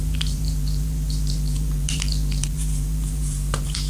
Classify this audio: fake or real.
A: fake